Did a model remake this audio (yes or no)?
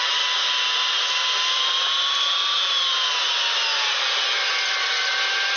no